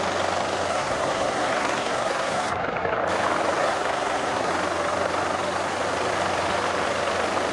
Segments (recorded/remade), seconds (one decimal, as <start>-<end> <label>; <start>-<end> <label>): 0.0-0.7 recorded; 0.7-3.0 remade; 3.0-3.6 recorded; 3.6-4.5 remade; 4.5-7.5 recorded